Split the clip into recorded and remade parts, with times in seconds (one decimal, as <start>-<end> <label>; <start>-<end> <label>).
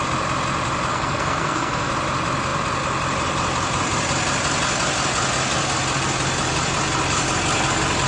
0.0-0.9 recorded; 0.9-1.9 remade; 1.9-8.1 recorded